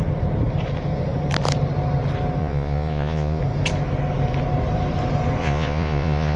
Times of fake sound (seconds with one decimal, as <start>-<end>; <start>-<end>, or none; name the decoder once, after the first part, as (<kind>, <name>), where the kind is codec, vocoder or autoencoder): 2.4-3.4 (vocoder, Vocos); 5.4-6.4